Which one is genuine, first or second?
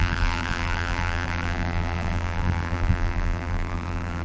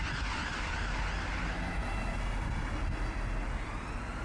second